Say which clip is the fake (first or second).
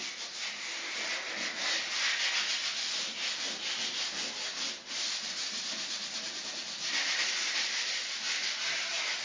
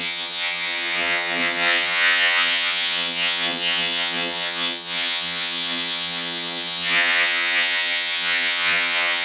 second